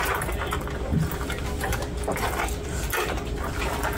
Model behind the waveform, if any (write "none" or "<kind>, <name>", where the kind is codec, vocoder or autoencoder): none